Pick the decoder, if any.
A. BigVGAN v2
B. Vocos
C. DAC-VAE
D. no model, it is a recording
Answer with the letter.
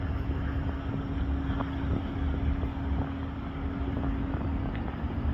D